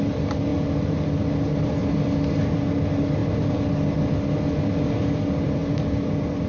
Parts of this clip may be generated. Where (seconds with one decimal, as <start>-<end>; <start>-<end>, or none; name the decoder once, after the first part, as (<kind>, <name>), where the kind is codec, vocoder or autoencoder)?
none